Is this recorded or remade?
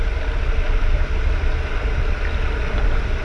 recorded